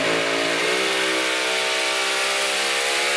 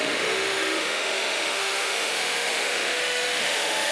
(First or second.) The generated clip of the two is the second